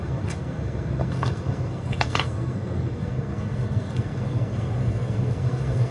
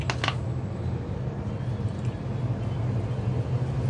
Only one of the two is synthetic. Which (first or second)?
first